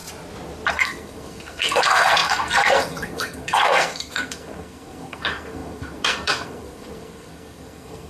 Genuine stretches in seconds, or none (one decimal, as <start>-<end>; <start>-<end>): 0.0-0.7